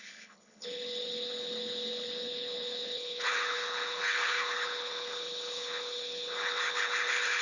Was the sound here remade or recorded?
remade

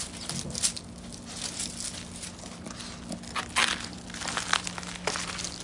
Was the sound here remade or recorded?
recorded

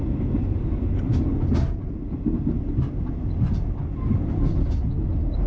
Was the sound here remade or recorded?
recorded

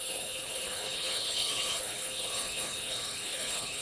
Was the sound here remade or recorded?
remade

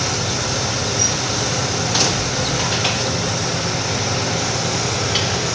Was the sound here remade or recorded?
recorded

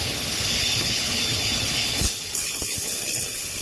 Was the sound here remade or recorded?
remade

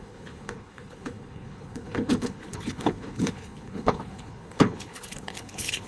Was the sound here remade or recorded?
remade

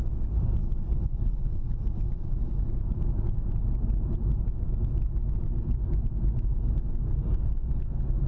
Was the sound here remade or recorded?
recorded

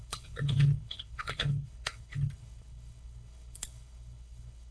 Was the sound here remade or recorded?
remade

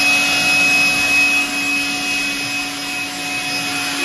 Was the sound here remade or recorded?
recorded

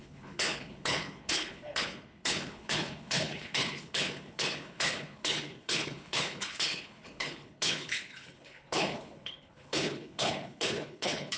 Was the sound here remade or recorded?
remade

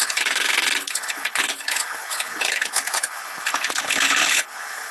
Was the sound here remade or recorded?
remade